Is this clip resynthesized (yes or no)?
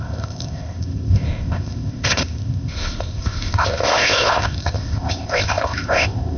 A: yes